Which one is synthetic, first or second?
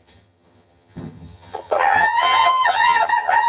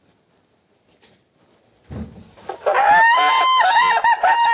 first